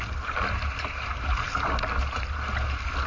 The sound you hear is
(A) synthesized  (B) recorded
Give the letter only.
B